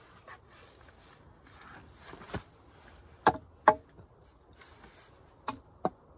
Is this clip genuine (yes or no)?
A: yes